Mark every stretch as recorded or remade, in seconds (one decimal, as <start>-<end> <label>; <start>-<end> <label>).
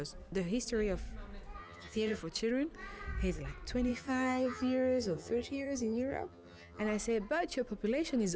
0.0-1.6 recorded; 1.6-2.2 remade; 2.2-3.9 recorded; 3.9-6.8 remade; 6.8-8.4 recorded